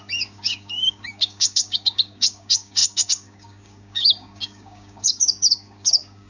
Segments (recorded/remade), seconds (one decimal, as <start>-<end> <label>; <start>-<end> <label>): 0.0-6.3 remade